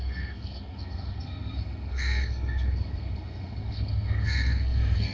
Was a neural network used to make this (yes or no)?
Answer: yes